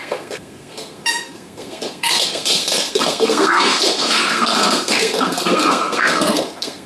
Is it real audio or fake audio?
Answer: fake